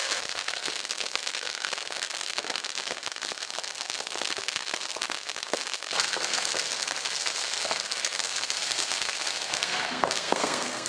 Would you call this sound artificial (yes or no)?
yes